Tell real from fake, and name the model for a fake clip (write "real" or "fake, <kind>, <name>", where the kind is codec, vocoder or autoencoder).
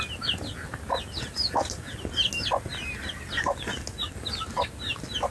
real